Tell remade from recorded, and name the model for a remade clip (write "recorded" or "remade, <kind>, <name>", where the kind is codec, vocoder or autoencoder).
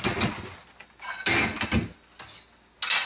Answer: recorded